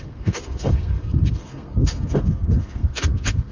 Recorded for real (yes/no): no